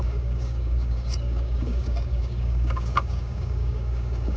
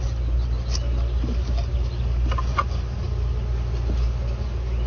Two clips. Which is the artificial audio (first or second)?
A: first